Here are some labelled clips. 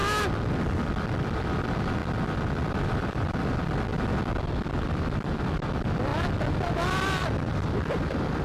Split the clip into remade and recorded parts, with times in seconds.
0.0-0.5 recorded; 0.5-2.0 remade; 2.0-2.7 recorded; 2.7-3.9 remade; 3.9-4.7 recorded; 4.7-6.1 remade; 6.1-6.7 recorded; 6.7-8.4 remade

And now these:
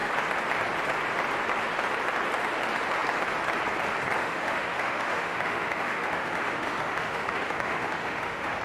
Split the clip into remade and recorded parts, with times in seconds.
0.0-4.2 recorded; 4.2-8.6 remade

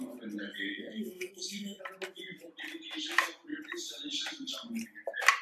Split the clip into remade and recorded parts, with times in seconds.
0.0-0.7 recorded; 0.7-1.8 remade; 1.8-5.4 recorded